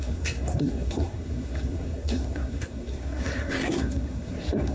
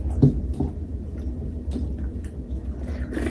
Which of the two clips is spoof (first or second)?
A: first